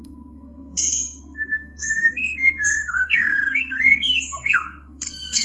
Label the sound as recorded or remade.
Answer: remade